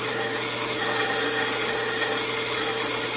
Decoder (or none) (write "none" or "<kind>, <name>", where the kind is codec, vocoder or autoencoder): none